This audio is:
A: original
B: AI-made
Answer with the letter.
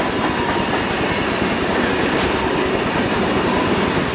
A